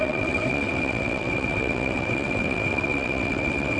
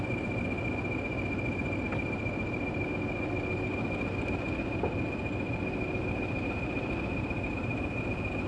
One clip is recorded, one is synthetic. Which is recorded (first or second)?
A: second